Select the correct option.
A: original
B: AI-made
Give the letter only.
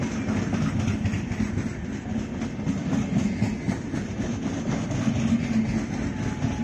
A